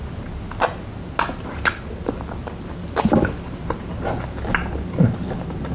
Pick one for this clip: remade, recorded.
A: recorded